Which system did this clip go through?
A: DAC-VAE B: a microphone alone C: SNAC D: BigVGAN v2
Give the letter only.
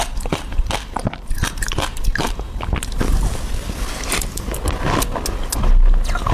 B